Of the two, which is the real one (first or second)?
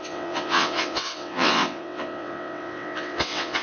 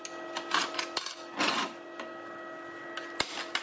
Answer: second